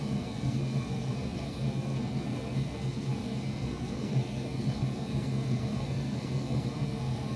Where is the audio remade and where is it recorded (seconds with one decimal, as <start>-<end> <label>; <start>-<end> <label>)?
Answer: 0.0-7.4 remade